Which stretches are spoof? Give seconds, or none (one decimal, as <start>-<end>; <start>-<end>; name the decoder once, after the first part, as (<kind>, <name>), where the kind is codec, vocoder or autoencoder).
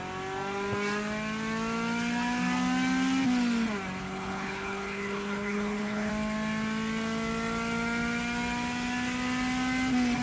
4.0-6.1 (codec, HILCodec)